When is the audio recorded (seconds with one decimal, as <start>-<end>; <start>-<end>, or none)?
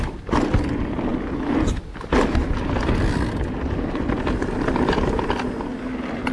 0.0-6.3